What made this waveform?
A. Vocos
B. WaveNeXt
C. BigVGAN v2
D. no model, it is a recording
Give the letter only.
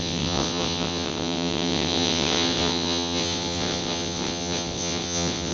B